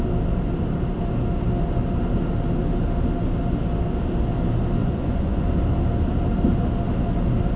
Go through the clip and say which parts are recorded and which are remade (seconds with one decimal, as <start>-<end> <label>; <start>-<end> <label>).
0.0-4.8 recorded; 4.8-5.4 remade; 5.4-7.6 recorded